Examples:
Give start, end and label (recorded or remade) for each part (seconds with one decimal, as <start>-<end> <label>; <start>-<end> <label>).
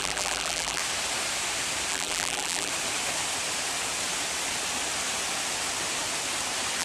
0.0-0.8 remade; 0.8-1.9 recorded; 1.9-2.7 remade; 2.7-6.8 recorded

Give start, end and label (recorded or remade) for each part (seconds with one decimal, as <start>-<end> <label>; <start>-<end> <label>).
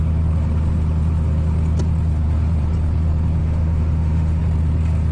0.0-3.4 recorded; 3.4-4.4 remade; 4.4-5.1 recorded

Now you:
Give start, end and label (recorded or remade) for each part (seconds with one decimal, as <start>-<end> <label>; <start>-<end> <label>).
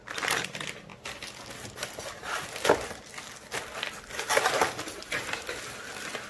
0.0-6.3 recorded